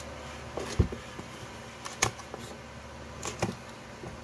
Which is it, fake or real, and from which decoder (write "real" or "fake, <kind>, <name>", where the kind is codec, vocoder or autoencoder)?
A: real